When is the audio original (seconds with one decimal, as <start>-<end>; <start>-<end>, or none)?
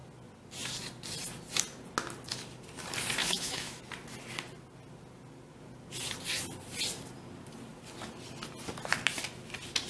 0.0-3.2; 3.8-9.9